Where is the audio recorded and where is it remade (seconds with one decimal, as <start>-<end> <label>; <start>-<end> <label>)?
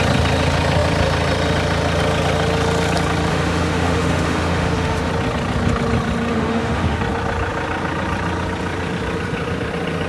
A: 0.0-3.3 recorded; 3.3-5.1 remade; 5.1-6.3 recorded; 6.3-7.0 remade; 7.0-10.1 recorded